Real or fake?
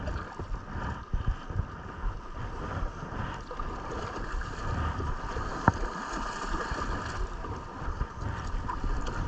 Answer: real